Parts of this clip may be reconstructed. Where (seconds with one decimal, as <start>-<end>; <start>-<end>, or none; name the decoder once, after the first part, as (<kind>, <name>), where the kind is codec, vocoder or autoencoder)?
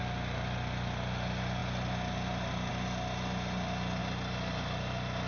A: none